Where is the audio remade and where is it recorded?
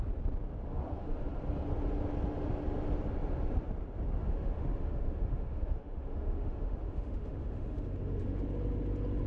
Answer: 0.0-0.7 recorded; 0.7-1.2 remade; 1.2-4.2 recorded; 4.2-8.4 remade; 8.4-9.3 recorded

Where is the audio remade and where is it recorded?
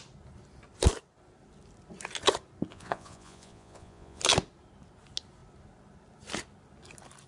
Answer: 0.0-2.7 recorded; 2.7-4.2 remade; 4.2-7.3 recorded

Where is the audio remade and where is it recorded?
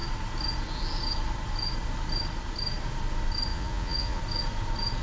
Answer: 0.0-3.5 recorded; 3.5-4.2 remade; 4.2-5.0 recorded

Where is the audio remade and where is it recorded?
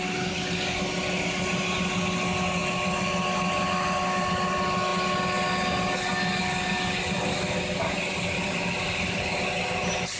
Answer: 0.0-10.2 recorded